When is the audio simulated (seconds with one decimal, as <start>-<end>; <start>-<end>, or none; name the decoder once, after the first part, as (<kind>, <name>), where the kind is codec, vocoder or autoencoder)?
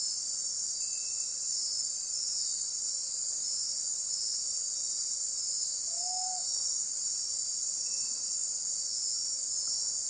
1.8-2.9 (vocoder, Vocos); 3.3-3.8; 6.6-7.9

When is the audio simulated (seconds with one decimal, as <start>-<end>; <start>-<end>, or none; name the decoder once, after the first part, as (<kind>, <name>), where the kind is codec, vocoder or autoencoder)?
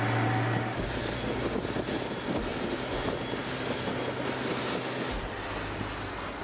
none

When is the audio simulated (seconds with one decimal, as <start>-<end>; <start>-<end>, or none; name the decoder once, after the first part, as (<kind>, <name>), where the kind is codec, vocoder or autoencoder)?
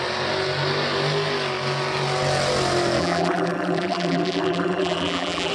3.0-5.5 (vocoder, BigVGAN v2)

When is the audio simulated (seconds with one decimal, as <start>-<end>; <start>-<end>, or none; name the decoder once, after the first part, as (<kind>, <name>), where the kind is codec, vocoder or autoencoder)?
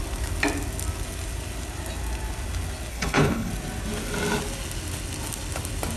2.9-3.5 (codec, HILCodec)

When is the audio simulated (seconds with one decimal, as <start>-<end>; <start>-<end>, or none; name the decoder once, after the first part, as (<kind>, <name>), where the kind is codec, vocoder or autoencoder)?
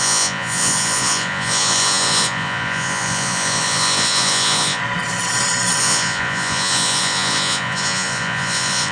0.0-4.8 (vocoder, Vocos); 5.8-8.9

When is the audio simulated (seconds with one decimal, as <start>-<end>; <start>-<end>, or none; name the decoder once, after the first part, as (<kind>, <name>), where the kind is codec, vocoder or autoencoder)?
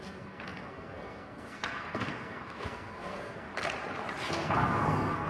0.0-3.5 (codec, SNAC); 4.3-5.3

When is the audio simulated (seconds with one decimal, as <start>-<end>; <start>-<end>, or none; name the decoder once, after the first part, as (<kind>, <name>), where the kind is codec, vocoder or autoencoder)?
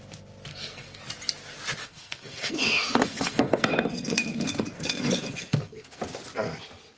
0.5-1.0 (codec, SNAC); 1.8-6.0